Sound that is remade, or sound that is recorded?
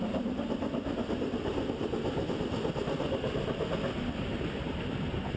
recorded